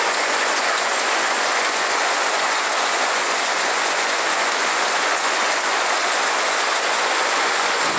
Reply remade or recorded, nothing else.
remade